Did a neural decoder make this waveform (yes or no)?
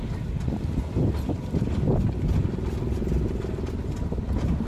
no